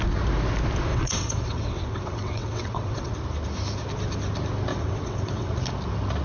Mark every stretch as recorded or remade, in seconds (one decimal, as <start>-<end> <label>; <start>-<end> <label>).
0.0-0.9 recorded; 0.9-3.1 remade; 3.1-4.7 recorded; 4.7-5.5 remade; 5.5-6.2 recorded